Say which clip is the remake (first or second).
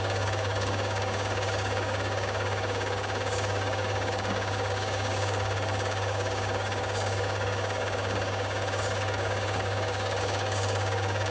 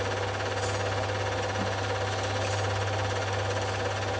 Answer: first